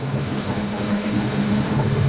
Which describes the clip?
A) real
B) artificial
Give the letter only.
B